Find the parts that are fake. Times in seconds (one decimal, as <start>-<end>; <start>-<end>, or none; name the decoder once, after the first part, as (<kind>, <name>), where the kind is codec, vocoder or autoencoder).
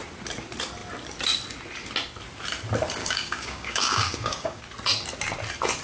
3.0-4.6 (codec, DAC)